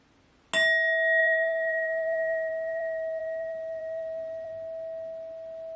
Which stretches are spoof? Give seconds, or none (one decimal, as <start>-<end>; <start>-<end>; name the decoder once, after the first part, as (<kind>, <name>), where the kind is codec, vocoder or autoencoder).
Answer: 1.2-4.5 (vocoder, BigVGAN v2)